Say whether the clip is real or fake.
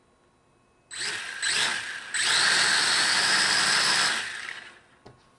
real